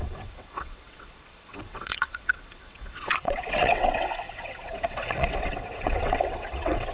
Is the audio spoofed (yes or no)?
yes